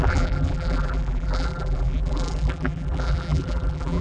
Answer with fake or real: fake